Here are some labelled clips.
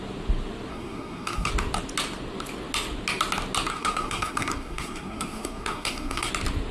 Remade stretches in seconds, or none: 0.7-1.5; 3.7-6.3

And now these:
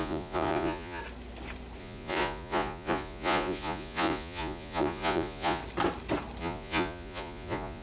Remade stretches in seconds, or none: 0.0-1.0; 1.8-5.6; 6.4-7.8

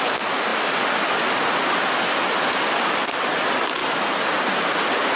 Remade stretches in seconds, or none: none

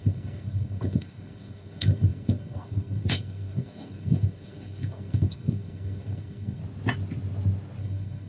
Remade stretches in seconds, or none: 0.0-6.6; 7.8-8.3

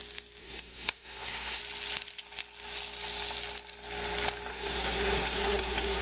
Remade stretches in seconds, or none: 0.4-1.6; 4.5-6.0

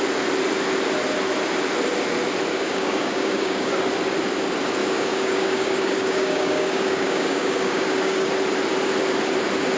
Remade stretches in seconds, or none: 2.5-3.7; 4.8-8.3

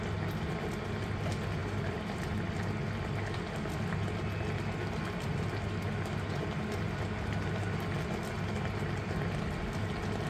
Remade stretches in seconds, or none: 1.6-2.2